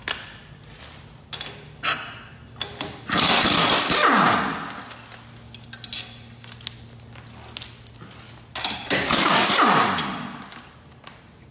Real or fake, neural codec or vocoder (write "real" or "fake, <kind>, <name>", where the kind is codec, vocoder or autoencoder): real